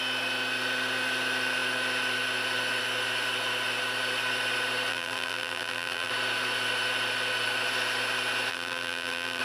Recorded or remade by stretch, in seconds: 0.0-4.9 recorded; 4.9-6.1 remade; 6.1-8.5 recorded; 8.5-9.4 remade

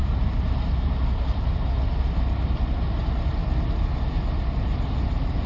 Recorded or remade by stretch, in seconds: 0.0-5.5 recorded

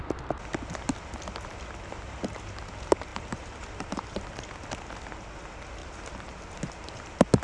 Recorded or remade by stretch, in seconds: 0.0-3.1 recorded; 3.1-4.3 remade; 4.3-5.8 recorded; 5.8-7.0 remade; 7.0-7.4 recorded